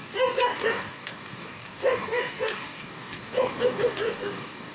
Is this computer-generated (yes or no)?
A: yes